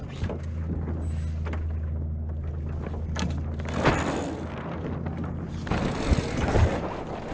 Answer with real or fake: real